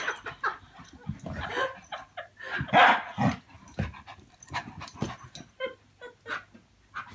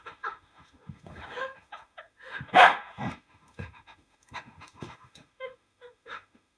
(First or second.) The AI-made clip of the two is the second